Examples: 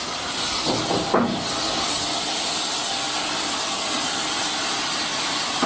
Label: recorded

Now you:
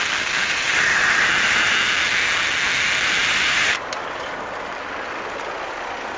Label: recorded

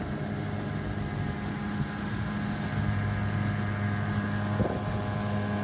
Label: recorded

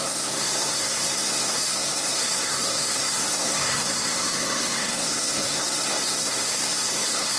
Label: remade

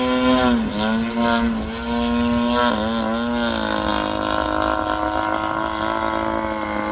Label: recorded